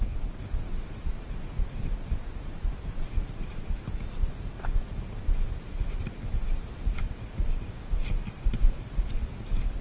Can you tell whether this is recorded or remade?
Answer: recorded